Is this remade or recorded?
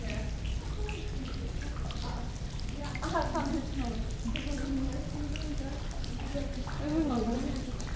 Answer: recorded